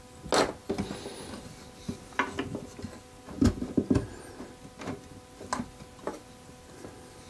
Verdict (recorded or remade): recorded